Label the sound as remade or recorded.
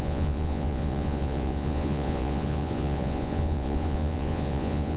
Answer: remade